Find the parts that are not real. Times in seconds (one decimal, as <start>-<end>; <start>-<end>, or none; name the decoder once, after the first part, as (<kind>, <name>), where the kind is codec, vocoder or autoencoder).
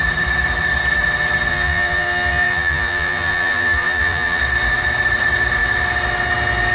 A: 1.5-4.4 (vocoder, BigVGAN v2)